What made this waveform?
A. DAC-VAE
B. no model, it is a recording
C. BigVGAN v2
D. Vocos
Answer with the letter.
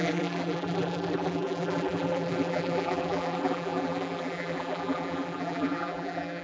C